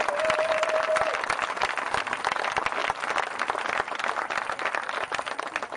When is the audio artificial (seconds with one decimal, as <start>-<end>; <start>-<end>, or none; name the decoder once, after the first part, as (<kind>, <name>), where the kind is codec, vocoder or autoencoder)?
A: none